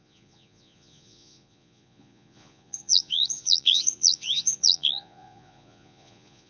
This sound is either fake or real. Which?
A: fake